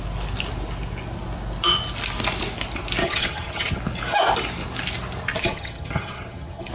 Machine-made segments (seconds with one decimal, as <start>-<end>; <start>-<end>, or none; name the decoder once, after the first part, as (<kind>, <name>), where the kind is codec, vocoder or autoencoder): 3.0-3.8 (vocoder, HiFi-GAN); 5.4-6.7